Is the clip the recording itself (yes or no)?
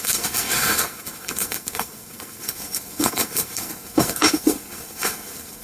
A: no